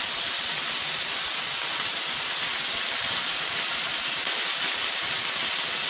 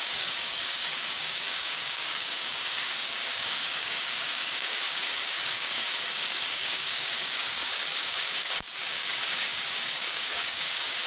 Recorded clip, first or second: first